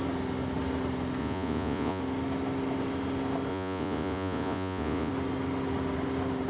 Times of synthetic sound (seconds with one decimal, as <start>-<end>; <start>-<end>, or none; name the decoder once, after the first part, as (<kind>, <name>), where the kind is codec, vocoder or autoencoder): 1.2-2.0 (vocoder, Vocos); 3.5-5.1